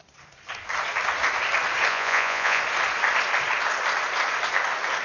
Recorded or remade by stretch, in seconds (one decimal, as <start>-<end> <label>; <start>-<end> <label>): 0.0-1.9 recorded; 1.9-2.6 remade; 2.6-5.0 recorded